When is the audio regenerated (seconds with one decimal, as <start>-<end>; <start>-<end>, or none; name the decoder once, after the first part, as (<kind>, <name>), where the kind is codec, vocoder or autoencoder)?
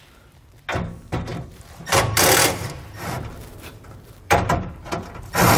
1.3-4.7 (vocoder, BigVGAN v2)